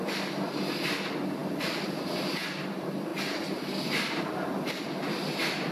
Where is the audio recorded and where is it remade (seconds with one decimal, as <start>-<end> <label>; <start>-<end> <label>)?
0.0-5.7 recorded